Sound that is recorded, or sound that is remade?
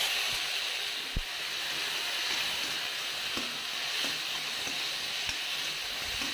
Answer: recorded